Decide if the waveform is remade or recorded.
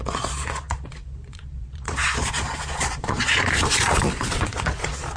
remade